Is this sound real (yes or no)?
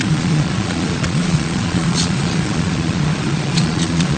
no